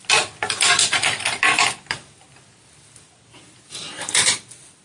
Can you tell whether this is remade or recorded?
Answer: recorded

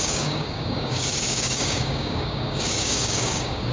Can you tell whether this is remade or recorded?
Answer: remade